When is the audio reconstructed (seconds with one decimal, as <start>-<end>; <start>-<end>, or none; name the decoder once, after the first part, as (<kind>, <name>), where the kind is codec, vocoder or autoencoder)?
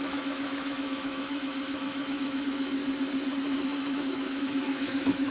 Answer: 0.0-2.8 (autoencoder, DAC-VAE); 3.3-5.3